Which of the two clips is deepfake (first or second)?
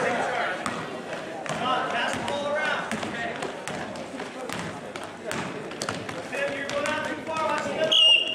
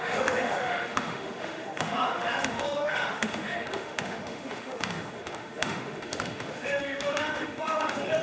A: second